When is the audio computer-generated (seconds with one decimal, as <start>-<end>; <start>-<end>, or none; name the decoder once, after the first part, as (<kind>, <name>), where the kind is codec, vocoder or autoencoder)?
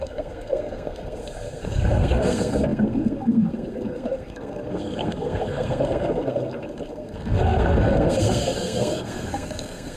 0.0-10.0 (codec, SNAC)